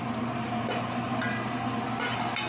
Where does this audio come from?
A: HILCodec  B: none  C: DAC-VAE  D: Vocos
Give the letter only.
B